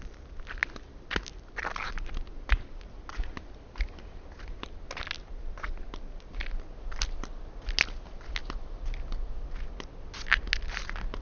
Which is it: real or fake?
real